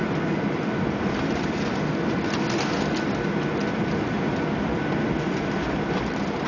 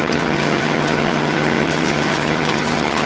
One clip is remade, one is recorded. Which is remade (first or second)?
second